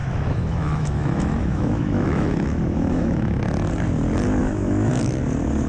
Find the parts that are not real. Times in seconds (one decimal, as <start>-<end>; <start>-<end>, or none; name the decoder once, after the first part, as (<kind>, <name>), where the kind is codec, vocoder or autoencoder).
0.0-3.4 (autoencoder, DAC-VAE); 4.4-5.0